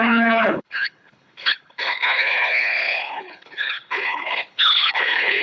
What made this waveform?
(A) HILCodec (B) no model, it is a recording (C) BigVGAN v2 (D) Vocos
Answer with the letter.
A